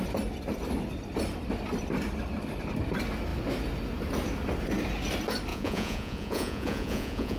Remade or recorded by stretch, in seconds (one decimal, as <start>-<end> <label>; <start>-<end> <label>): 0.0-5.5 recorded; 5.5-7.4 remade